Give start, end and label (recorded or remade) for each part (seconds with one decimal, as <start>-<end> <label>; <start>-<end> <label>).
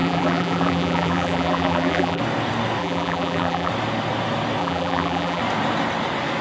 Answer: 0.0-2.2 remade; 2.2-2.8 recorded; 2.8-3.7 remade; 3.7-4.6 recorded; 4.6-5.4 remade; 5.4-6.4 recorded